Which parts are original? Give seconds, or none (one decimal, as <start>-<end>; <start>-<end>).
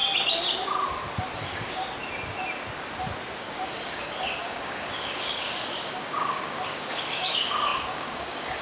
0.0-1.4; 1.8-3.4